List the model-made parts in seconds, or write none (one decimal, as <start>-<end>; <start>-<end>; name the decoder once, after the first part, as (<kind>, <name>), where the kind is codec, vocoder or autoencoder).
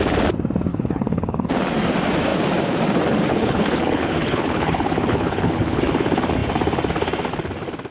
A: 0.7-1.5 (codec, HILCodec); 3.3-5.8